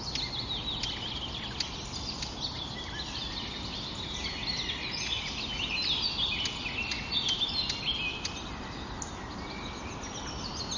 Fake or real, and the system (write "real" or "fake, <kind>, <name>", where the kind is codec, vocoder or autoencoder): real